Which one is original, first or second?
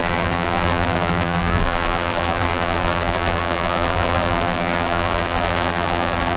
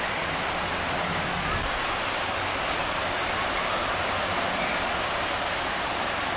second